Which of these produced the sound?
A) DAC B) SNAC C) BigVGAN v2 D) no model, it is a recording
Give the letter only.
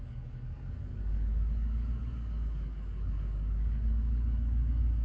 A